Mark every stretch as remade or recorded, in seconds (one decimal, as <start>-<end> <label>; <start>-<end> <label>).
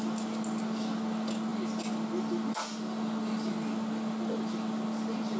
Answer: 0.0-5.4 recorded